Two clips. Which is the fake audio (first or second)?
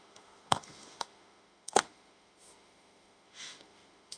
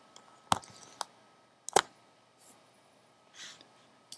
first